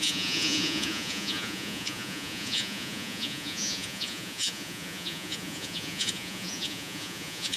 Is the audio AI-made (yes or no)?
yes